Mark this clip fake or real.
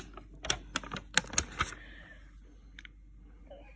real